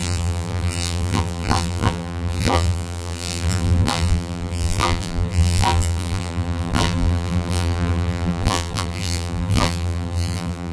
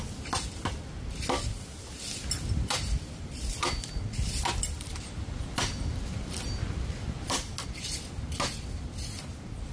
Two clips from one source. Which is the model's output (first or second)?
first